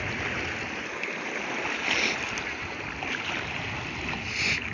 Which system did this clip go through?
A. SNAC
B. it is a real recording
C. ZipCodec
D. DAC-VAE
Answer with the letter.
B